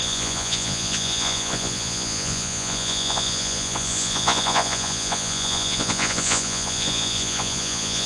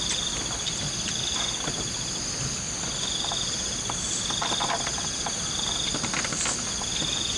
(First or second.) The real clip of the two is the second